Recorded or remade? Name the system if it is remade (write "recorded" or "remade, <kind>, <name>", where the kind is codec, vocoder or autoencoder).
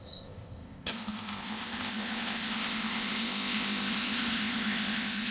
remade, codec, ZipCodec